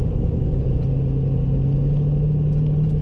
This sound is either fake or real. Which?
real